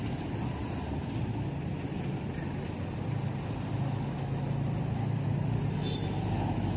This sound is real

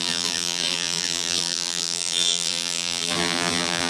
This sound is fake